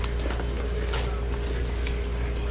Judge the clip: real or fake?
real